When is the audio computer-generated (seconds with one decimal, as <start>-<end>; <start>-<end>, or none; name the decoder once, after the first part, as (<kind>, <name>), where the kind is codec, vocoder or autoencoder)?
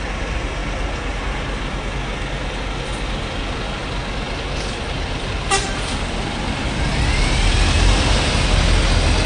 none